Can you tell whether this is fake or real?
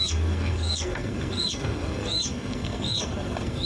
fake